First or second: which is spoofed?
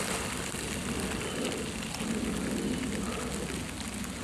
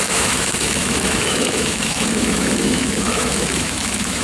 second